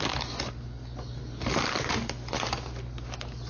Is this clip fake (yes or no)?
no